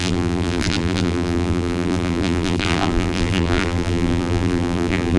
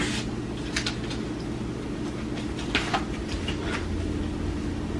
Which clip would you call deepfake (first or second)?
first